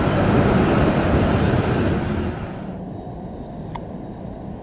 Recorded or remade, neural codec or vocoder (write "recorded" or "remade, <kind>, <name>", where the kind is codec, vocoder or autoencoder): recorded